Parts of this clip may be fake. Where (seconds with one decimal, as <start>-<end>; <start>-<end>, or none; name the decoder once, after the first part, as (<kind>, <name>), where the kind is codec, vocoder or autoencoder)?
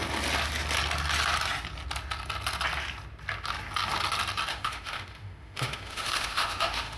4.5-7.0 (autoencoder, DAC-VAE)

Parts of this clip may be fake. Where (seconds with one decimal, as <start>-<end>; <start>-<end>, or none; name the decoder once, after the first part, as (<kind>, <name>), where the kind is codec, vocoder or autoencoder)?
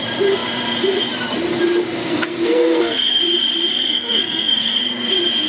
2.0-3.2 (codec, SNAC); 3.7-4.8